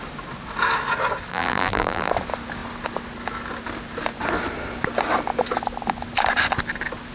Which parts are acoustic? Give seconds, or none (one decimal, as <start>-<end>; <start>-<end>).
0.0-1.3; 2.1-7.1